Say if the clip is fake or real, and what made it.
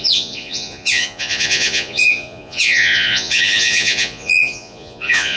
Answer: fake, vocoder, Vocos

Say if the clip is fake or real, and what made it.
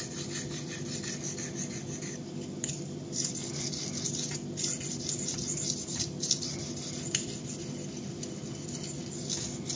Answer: real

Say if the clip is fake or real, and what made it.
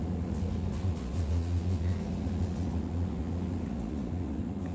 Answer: fake, vocoder, Vocos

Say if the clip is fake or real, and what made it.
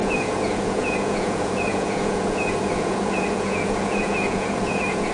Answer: fake, vocoder, Vocos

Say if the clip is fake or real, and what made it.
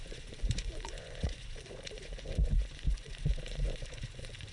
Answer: fake, vocoder, Vocos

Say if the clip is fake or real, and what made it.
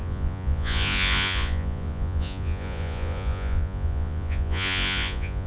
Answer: fake, vocoder, Vocos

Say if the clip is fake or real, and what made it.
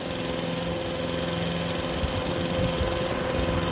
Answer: real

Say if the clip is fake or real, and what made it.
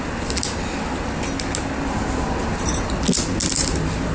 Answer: real